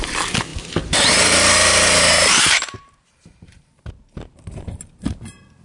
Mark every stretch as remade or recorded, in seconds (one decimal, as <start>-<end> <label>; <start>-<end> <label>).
0.0-5.6 remade